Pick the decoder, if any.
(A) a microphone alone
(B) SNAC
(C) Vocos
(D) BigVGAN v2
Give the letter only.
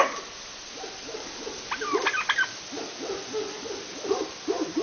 A